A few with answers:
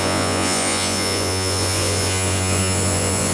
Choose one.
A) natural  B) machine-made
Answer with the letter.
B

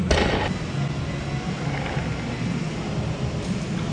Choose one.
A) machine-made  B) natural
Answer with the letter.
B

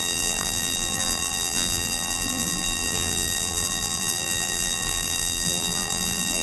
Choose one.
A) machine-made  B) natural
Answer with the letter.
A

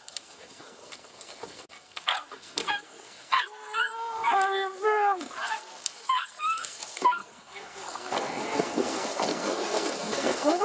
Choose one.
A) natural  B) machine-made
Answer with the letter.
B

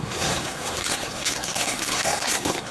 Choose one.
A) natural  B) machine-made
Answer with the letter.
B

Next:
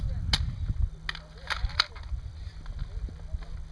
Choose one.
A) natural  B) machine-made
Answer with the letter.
A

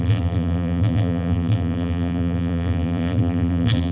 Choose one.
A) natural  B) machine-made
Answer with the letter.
B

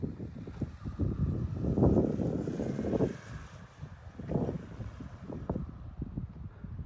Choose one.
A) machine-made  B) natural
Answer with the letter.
B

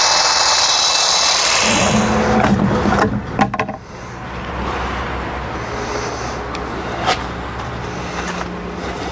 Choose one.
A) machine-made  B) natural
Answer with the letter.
B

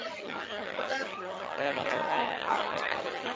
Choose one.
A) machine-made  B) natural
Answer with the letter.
A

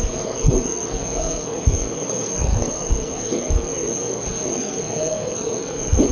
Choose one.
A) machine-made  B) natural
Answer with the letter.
A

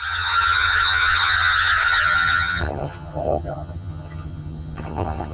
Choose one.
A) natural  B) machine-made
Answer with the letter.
B